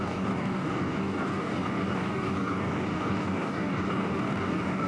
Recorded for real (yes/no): no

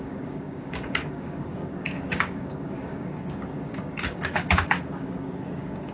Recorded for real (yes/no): no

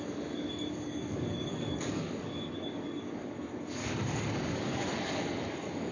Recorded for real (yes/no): no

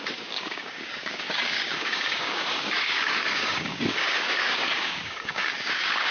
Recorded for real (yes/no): no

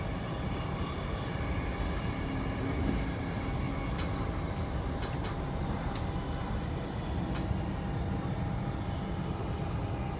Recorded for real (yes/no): yes